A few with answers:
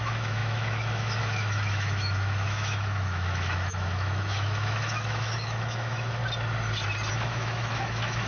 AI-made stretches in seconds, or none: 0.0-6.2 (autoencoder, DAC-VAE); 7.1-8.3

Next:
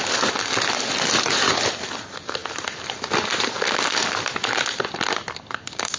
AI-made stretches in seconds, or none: none

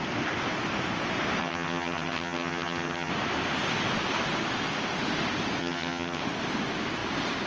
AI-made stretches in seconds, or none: 1.4-3.1 (vocoder, HiFi-GAN); 5.6-6.2

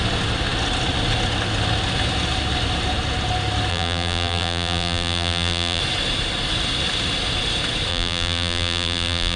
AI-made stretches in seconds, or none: 3.7-5.8 (vocoder, BigVGAN v2); 7.9-9.4

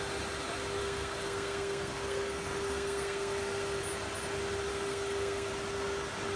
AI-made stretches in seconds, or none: 0.8-3.8 (codec, SNAC); 4.7-5.5

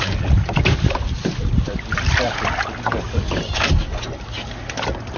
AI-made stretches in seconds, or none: none

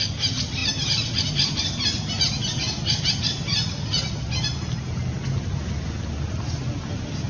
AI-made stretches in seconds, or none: none